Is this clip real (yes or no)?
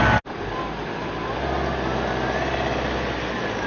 yes